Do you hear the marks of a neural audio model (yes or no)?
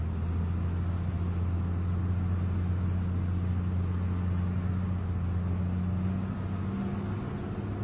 no